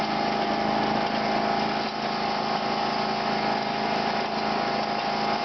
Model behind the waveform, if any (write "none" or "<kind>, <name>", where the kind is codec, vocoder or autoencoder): none